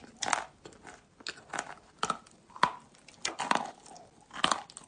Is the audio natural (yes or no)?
yes